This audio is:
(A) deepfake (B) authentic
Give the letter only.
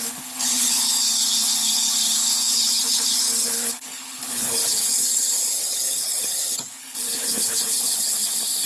A